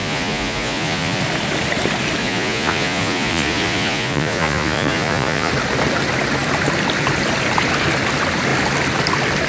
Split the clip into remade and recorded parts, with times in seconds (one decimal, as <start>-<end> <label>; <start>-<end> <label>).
0.0-1.2 remade; 1.2-2.2 recorded; 2.2-5.5 remade; 5.5-9.5 recorded

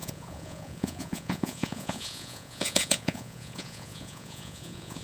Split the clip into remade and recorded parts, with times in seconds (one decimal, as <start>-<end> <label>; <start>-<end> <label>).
0.0-5.0 remade

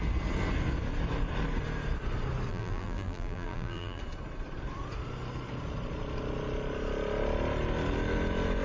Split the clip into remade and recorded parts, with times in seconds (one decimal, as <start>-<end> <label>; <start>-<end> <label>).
0.0-2.5 recorded; 2.5-4.0 remade; 4.0-8.6 recorded

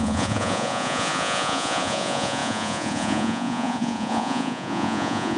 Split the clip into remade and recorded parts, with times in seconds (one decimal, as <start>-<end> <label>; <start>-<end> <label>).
0.0-5.4 remade

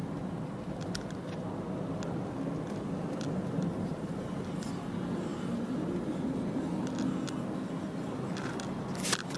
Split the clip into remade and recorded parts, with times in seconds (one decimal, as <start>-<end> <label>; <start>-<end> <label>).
0.0-9.4 recorded